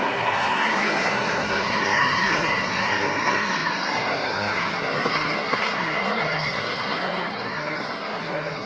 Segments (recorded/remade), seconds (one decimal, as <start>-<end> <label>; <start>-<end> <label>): 0.0-8.7 remade